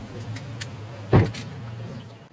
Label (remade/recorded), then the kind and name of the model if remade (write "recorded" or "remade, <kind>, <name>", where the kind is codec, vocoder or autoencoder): recorded